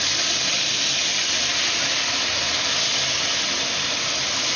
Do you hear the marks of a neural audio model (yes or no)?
no